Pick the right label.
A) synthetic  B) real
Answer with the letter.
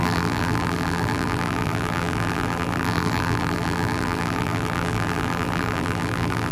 A